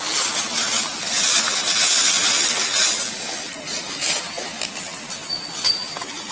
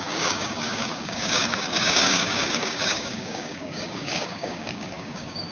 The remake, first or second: second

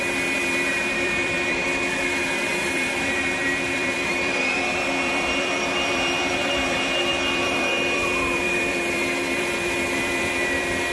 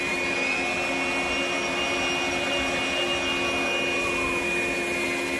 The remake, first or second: first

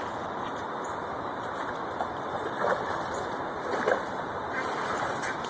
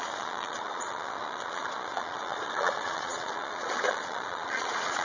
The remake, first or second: second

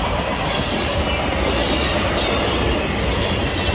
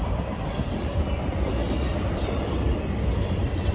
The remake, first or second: second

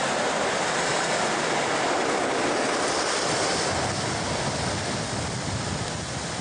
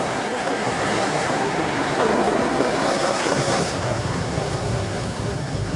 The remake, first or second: second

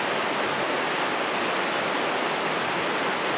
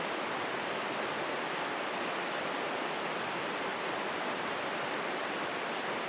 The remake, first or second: second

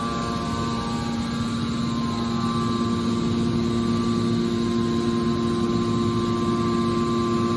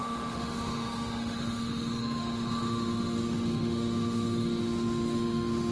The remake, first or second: second